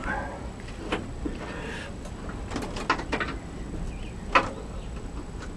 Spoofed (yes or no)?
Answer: no